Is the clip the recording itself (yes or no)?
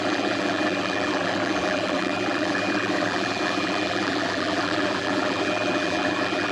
no